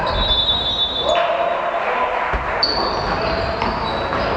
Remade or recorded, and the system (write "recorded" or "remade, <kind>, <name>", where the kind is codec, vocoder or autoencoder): recorded